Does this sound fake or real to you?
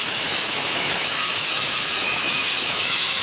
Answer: fake